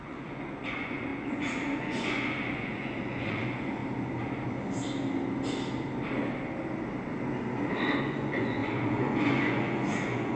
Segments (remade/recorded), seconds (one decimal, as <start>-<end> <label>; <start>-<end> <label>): 0.0-3.8 remade; 3.8-8.0 recorded; 8.0-10.4 remade